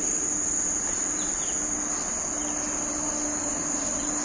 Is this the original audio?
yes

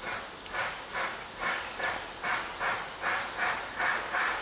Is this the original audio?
yes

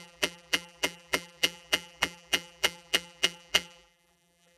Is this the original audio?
no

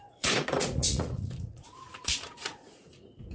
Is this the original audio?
no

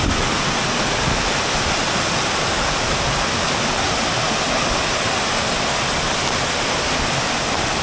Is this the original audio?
yes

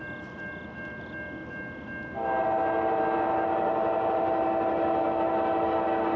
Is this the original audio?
yes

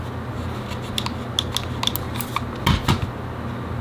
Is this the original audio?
yes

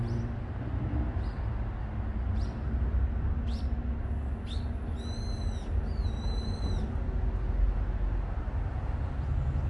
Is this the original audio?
yes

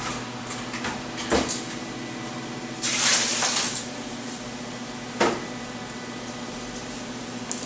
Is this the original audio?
yes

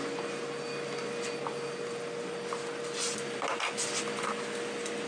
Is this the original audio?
yes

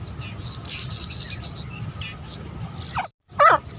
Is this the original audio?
yes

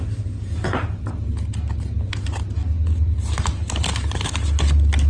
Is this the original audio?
yes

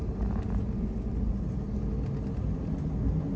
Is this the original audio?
yes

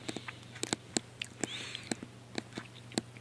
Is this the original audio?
yes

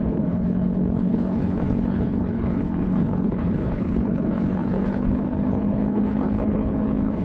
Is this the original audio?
no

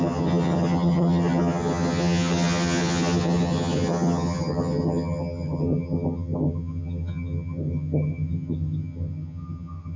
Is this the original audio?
no